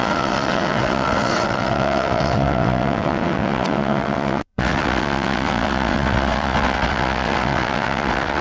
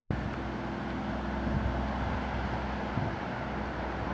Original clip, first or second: second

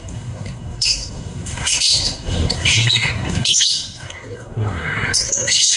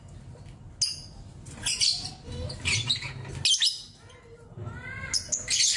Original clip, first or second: second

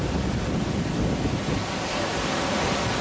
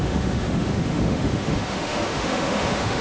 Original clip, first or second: first